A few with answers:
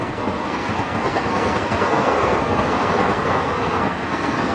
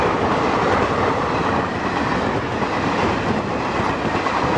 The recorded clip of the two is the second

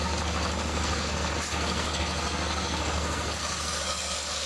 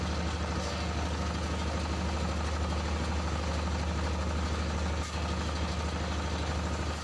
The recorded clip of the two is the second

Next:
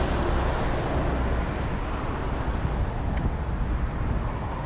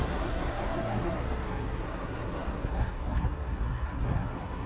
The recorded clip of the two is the first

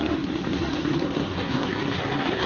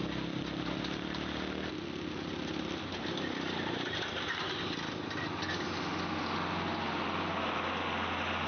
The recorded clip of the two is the second